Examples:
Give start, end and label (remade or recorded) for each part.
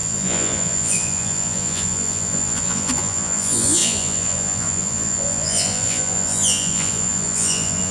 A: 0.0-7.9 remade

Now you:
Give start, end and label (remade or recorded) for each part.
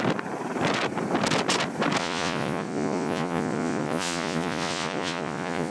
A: 0.0-2.0 recorded; 2.0-5.7 remade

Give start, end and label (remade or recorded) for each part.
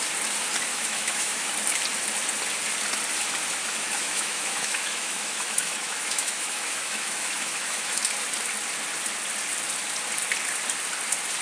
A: 0.0-0.7 recorded; 0.7-1.5 remade; 1.5-3.6 recorded; 3.6-8.0 remade; 8.0-11.4 recorded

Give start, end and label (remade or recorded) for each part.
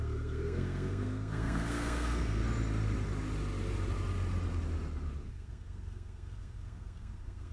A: 0.0-2.4 remade; 2.4-5.3 recorded; 5.3-7.5 remade